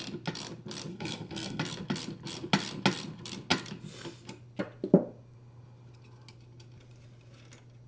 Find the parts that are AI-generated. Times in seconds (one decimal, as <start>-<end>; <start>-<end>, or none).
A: 0.9-1.6